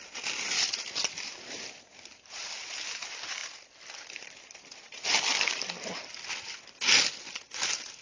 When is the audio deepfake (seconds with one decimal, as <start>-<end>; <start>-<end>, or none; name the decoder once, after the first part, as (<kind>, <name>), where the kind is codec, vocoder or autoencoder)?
none